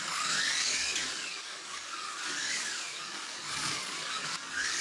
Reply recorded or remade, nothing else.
remade